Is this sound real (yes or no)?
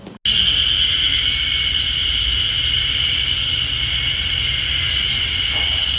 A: yes